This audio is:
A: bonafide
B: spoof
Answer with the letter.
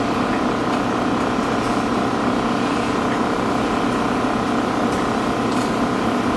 A